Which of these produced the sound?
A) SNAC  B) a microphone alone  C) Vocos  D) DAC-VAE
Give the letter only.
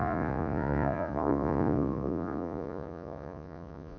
C